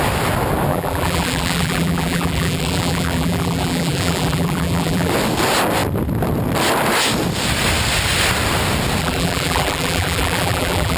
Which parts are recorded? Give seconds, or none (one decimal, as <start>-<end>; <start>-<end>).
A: 0.0-0.7; 5.1-9.0